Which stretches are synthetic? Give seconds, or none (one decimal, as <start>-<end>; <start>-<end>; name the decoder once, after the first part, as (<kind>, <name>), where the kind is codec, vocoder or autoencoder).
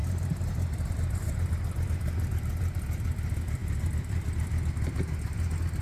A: none